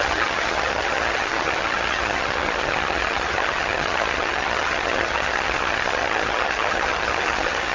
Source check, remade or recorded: remade